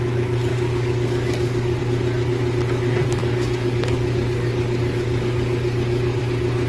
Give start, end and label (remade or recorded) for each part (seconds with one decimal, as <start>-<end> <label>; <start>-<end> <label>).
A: 0.0-0.5 recorded; 0.5-1.8 remade; 1.8-3.2 recorded; 3.2-6.2 remade; 6.2-6.7 recorded